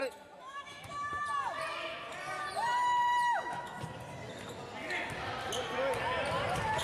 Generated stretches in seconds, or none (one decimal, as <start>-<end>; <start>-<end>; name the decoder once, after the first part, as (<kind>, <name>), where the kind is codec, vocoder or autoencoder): 0.4-1.1 (autoencoder, DAC-VAE); 3.3-3.8

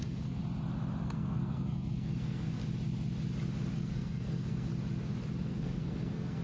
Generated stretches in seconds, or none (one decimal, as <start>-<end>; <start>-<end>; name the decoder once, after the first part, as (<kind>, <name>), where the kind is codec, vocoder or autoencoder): 0.0-0.4 (codec, SNAC); 1.0-2.6; 3.7-4.7; 5.4-6.4

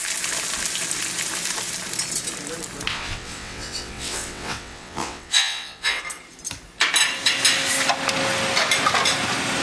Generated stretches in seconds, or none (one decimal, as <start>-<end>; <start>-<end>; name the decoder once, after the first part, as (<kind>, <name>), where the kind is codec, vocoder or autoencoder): 2.9-6.0 (vocoder, WaveNeXt)

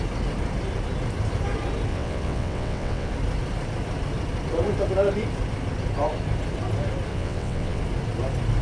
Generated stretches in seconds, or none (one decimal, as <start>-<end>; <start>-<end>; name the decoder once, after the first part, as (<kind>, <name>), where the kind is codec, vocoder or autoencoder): 1.9-3.1 (vocoder, WaveNeXt); 7.1-7.8

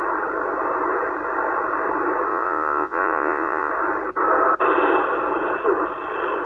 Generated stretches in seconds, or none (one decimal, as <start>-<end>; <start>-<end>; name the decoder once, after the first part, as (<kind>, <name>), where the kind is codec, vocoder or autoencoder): 2.3-3.7 (vocoder, Vocos)